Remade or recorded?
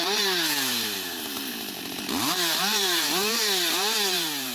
remade